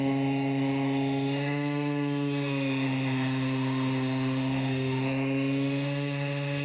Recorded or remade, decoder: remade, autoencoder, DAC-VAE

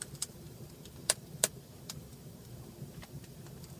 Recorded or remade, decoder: remade, vocoder, BigVGAN v2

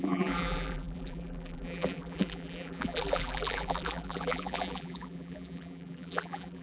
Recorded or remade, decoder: remade, vocoder, BigVGAN v2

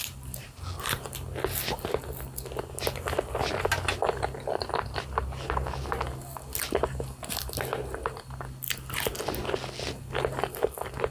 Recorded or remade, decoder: recorded